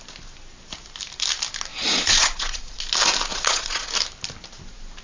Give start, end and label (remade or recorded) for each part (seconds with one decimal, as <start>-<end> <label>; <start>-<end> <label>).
0.0-1.7 recorded; 1.7-2.8 remade; 2.8-3.3 recorded; 3.3-3.9 remade; 3.9-5.0 recorded